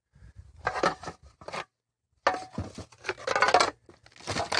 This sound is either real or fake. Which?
real